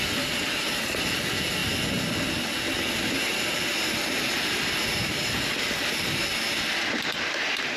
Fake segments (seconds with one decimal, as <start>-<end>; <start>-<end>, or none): 0.0-1.6; 5.1-7.8